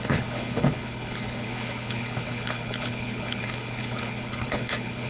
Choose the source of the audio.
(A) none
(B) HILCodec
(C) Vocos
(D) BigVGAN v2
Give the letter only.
B